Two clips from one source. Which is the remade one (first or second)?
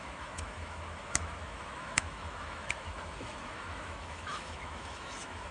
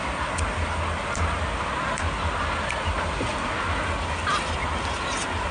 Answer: first